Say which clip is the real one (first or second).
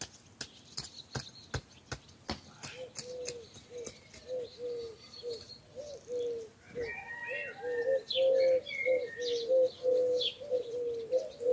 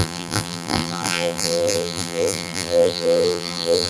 first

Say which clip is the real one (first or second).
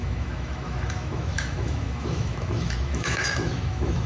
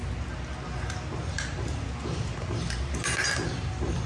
second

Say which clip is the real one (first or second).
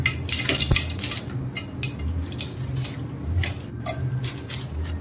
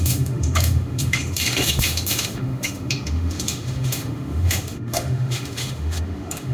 first